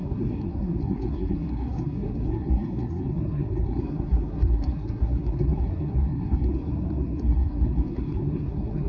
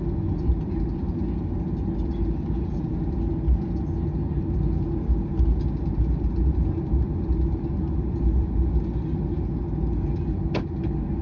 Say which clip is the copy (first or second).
first